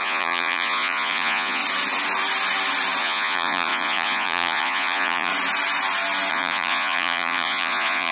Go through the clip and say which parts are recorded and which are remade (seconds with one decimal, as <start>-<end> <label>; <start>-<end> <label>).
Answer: 0.0-1.6 remade; 1.6-3.0 recorded; 3.0-5.3 remade; 5.3-6.3 recorded; 6.3-8.1 remade